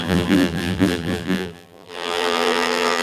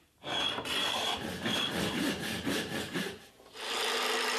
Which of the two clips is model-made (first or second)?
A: first